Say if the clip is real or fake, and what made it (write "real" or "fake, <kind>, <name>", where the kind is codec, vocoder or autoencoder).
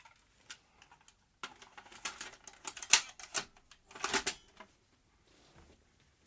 real